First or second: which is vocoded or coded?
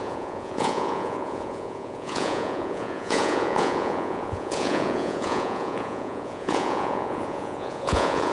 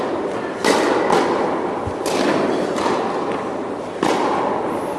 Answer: first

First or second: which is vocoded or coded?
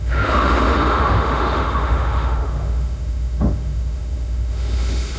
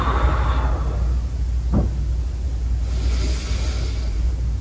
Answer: first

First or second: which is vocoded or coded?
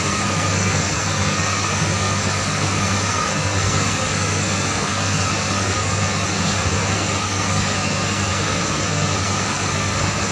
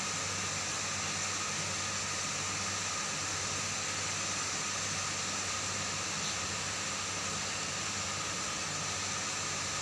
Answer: first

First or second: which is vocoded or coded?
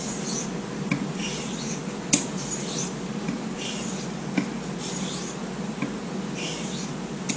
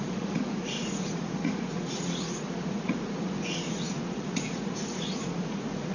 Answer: second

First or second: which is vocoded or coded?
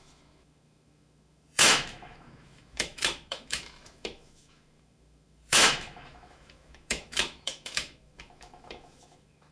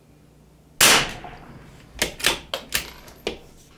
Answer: first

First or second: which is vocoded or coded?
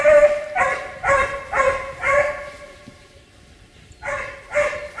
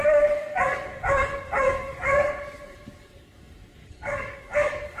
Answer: second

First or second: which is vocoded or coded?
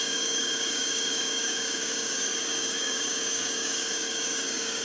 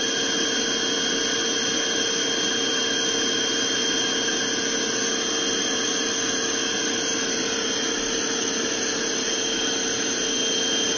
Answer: first